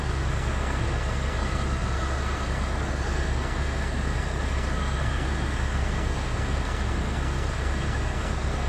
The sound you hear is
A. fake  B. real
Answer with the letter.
A